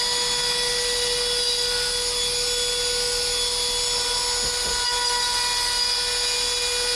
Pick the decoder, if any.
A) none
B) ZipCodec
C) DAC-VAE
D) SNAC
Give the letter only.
A